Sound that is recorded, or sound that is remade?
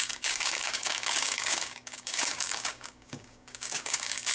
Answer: remade